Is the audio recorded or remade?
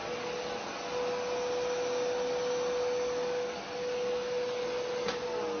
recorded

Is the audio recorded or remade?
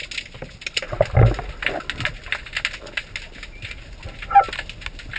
recorded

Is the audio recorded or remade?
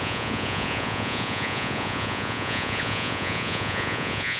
remade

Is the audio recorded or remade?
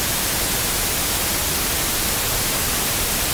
recorded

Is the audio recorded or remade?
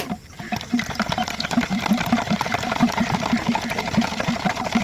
recorded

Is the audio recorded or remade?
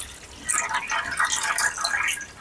recorded